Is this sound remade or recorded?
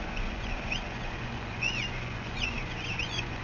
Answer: remade